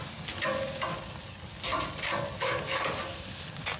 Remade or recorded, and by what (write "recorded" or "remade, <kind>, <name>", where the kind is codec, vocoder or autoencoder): recorded